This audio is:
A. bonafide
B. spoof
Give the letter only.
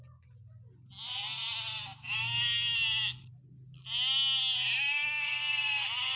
A